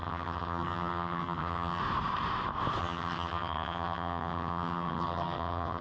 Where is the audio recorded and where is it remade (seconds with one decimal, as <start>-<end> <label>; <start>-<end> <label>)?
0.0-1.8 remade; 1.8-2.8 recorded; 2.8-5.8 remade